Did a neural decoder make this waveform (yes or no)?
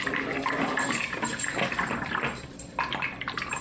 no